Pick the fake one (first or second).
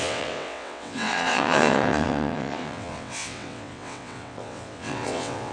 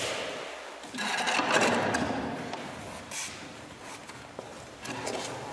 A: first